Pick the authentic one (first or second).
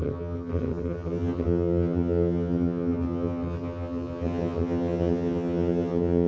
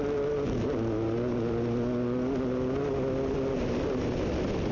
second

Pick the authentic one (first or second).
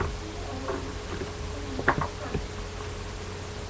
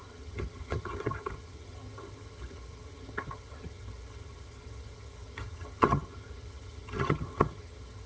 first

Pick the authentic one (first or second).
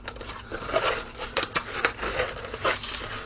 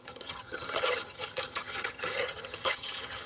first